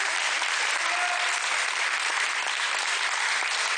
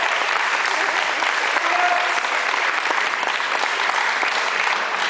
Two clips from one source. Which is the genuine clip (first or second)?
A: first